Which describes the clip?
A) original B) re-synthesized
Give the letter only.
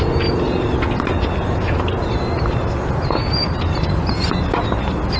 B